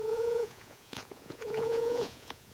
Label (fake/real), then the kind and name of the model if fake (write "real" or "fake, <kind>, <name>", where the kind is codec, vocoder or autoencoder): fake, vocoder, Vocos